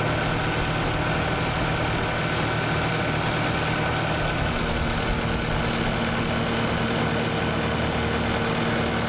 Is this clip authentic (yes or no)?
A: yes